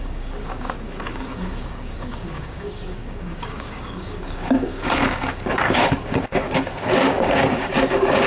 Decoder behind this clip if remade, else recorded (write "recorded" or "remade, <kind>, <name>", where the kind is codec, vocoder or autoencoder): remade, codec, DAC